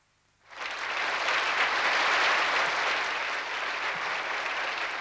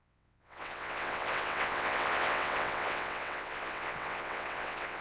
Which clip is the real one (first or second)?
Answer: first